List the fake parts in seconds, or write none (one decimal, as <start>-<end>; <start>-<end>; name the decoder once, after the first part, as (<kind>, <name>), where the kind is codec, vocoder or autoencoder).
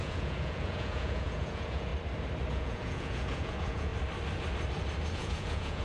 0.0-1.9 (vocoder, Vocos); 2.5-3.9; 5.1-5.8